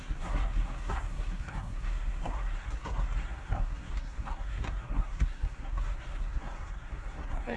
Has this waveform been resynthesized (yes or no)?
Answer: yes